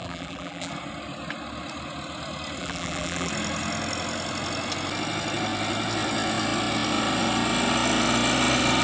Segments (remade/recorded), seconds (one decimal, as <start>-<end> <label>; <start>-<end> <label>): 0.0-0.7 remade; 0.7-2.6 recorded; 2.6-3.3 remade; 3.3-8.8 recorded